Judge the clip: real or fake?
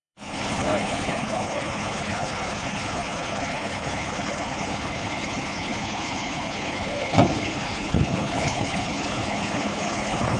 fake